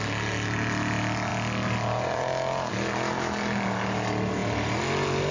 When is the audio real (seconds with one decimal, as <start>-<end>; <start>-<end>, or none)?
0.0-5.3